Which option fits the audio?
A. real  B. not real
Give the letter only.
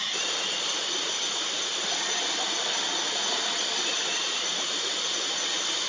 A